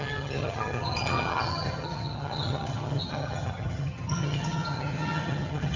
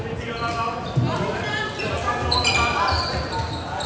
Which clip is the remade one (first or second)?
first